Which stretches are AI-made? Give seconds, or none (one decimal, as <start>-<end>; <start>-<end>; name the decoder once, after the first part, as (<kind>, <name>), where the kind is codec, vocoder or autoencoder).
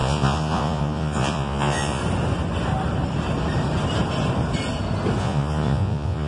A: 0.0-2.0 (vocoder, Vocos); 5.2-6.3